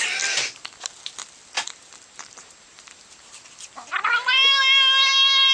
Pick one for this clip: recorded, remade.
recorded